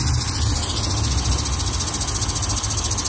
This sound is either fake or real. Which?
real